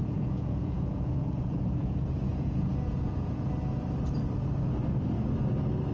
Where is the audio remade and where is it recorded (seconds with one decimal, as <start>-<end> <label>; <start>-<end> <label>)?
0.0-3.5 remade; 3.5-5.9 recorded